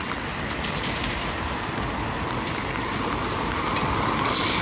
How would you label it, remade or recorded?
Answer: recorded